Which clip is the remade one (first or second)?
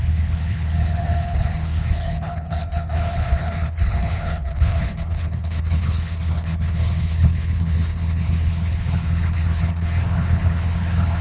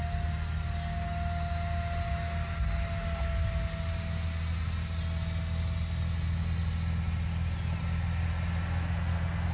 first